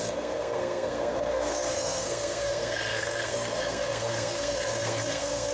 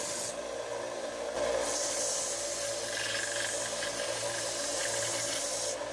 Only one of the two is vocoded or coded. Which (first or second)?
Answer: first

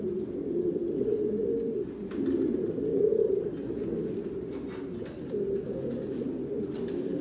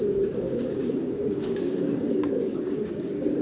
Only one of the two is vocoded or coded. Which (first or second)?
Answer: second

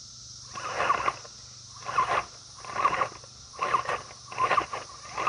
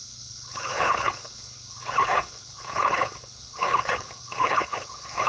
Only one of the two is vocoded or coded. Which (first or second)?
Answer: second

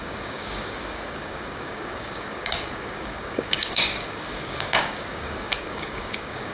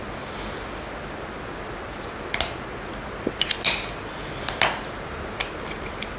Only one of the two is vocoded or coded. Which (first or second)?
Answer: first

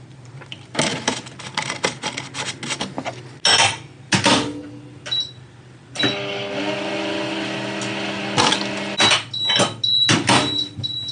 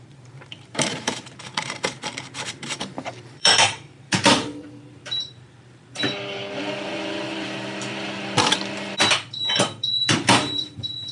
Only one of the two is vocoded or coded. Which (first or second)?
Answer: second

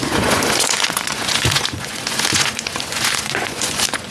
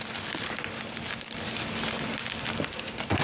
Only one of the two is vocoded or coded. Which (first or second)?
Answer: first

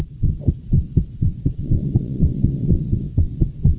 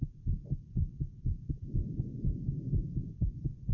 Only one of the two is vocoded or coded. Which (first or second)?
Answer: first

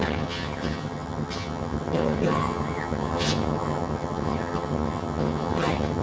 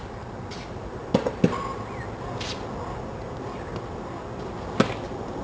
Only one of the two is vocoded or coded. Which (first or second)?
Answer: first